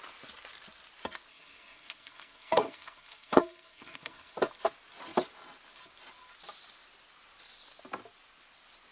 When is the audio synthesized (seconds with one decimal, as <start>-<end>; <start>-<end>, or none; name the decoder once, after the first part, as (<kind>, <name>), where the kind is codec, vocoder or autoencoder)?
1.3-4.3 (codec, SNAC)